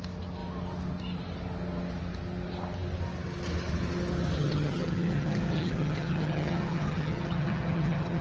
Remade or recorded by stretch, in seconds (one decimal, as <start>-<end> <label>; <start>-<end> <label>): 0.0-4.4 recorded; 4.4-8.2 remade